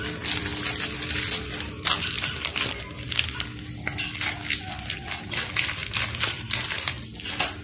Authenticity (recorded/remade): recorded